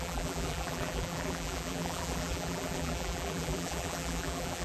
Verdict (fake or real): fake